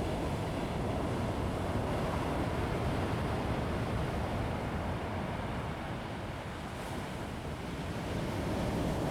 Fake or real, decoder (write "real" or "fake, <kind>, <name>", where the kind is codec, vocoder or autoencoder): real